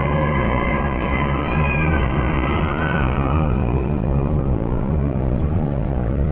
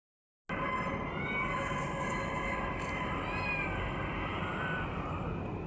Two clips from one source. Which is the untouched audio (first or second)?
second